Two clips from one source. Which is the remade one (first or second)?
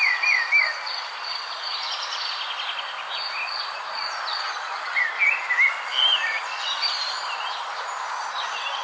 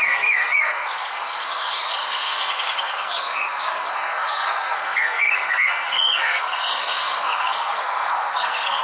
second